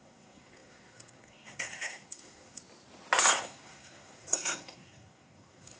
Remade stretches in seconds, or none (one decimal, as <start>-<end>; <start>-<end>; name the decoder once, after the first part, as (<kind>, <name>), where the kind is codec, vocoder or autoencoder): 0.0-2.6 (codec, SNAC); 3.3-5.8